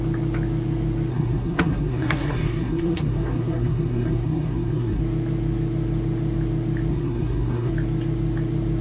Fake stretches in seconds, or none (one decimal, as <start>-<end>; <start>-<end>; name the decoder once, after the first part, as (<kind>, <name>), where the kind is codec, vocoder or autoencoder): 1.1-5.0 (codec, SNAC); 6.9-7.7